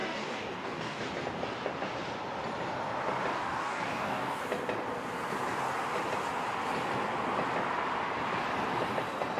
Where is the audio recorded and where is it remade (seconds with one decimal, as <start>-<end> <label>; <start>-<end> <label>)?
0.0-1.0 remade; 1.0-3.3 recorded; 3.3-4.4 remade; 4.4-9.4 recorded